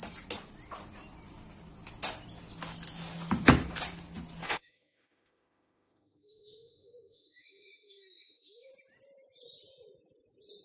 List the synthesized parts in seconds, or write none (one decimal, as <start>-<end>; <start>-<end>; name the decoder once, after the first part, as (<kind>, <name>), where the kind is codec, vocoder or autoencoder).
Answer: 4.4-8.7 (autoencoder, DAC-VAE)